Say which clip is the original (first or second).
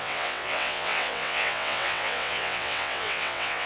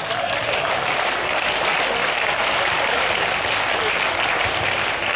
second